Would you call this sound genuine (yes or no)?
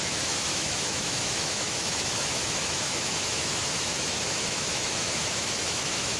no